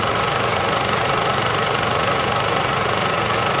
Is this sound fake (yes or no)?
yes